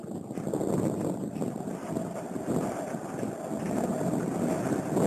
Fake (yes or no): no